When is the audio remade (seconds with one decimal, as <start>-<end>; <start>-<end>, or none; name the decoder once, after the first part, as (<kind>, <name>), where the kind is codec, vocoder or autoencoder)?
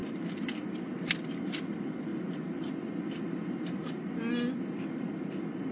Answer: none